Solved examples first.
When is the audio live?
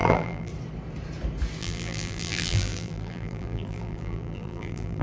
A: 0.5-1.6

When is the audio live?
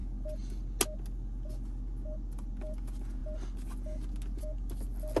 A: 0.0-5.2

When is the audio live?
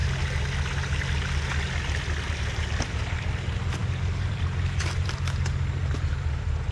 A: 0.0-3.8; 5.2-6.7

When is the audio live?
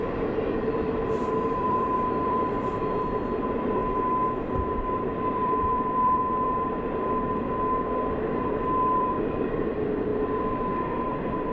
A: 3.8-4.8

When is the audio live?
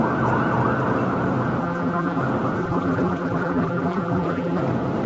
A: 0.0-1.6; 2.2-2.6; 4.6-5.1